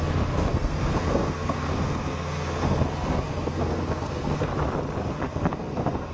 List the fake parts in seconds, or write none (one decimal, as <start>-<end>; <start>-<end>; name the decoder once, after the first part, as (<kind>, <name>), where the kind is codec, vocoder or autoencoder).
0.0-4.5 (codec, SNAC); 5.1-6.1